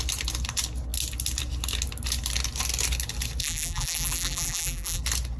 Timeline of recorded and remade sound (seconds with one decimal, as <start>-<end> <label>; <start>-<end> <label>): 0.0-3.4 recorded; 3.4-5.0 remade; 5.0-5.4 recorded